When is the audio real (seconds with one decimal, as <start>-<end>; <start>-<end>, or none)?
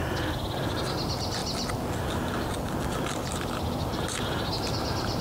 0.0-5.2